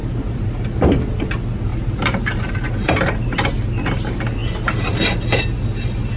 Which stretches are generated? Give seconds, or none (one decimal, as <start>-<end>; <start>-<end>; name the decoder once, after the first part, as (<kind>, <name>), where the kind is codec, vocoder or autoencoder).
0.0-0.5 (vocoder, BigVGAN v2); 1.7-3.1